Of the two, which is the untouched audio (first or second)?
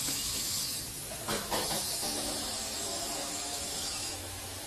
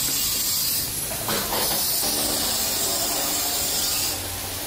second